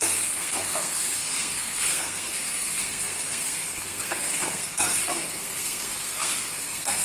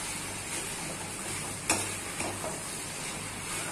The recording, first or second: second